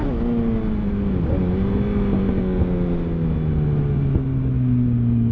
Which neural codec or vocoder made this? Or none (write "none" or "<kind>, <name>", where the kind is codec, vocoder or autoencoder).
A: none